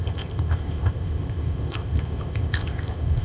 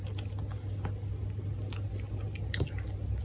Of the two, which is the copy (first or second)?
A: first